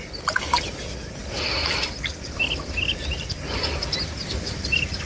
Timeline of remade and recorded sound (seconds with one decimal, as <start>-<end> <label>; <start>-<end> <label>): 0.0-5.1 recorded